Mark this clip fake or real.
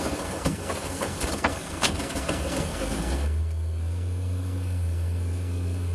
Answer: fake